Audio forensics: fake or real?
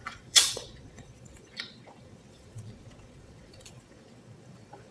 fake